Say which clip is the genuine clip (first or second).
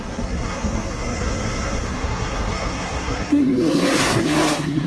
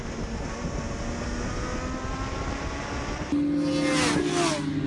second